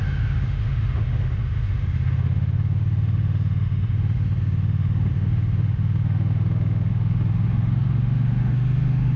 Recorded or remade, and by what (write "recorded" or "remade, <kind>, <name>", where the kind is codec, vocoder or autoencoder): remade, autoencoder, DAC-VAE